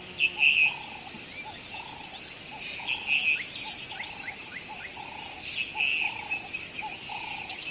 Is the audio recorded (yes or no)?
yes